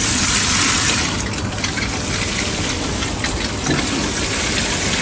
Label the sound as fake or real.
real